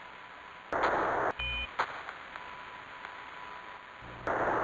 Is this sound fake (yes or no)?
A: no